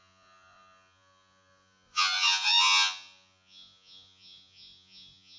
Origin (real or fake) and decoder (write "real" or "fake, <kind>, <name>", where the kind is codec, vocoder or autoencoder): fake, vocoder, Vocos